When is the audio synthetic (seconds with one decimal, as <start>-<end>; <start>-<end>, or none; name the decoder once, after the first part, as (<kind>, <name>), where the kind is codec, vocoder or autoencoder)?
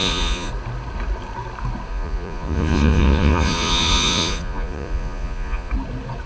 0.0-0.5 (vocoder, Vocos); 1.9-5.7